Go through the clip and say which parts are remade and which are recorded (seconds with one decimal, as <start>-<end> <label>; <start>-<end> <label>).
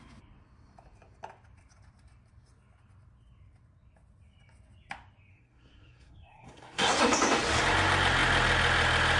0.0-5.3 recorded; 5.3-7.0 remade; 7.0-9.2 recorded